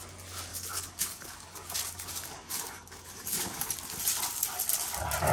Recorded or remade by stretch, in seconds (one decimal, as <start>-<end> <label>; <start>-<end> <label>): 0.0-0.5 recorded; 0.5-3.7 remade; 3.7-5.3 recorded